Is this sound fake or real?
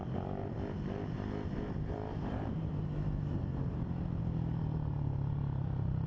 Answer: fake